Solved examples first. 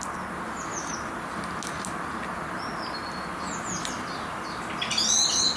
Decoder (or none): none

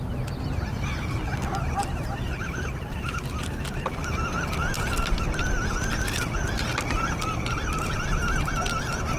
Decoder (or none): none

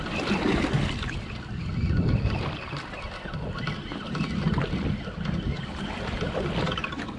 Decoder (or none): none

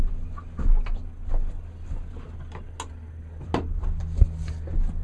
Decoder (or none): none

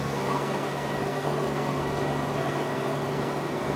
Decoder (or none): codec, SNAC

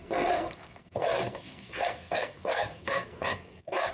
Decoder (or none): codec, SNAC